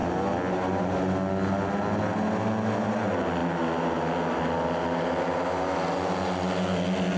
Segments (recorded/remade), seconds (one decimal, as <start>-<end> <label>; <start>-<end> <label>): 0.0-7.2 recorded